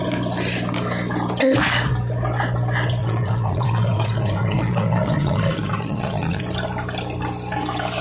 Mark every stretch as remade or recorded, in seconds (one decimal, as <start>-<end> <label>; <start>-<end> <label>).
0.0-3.0 recorded; 3.0-6.4 remade; 6.4-8.0 recorded